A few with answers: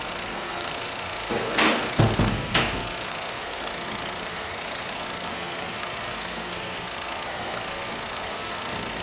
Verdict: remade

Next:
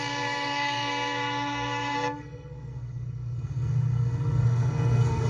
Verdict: remade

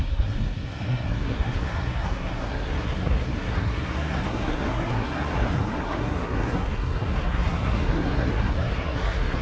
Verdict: remade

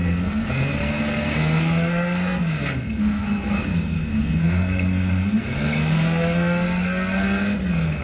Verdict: remade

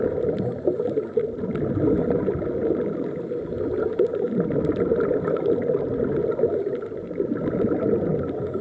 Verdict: recorded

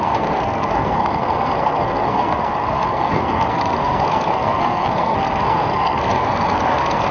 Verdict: remade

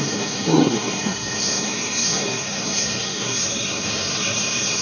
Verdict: remade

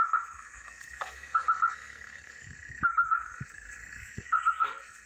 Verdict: remade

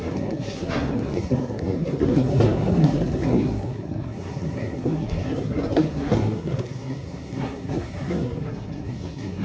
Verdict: remade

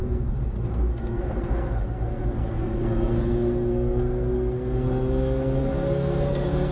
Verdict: remade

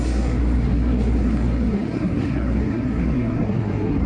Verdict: remade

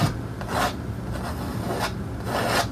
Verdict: recorded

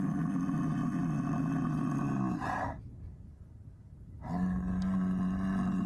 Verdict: recorded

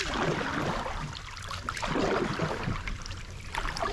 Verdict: recorded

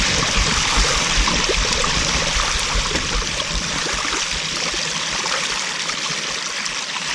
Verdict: recorded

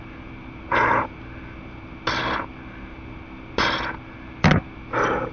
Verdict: recorded